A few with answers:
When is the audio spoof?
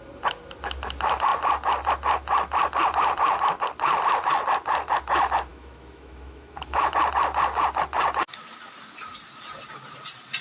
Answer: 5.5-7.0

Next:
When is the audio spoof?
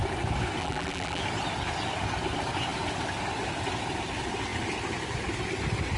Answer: 0.6-1.2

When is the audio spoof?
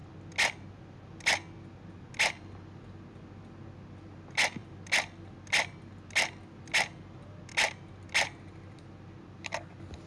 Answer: none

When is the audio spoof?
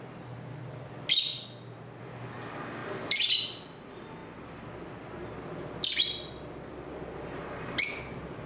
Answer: none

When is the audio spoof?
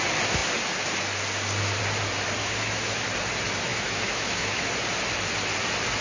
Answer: 2.4-3.0; 3.7-4.7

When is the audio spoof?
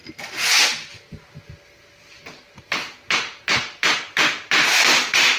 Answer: 2.6-4.0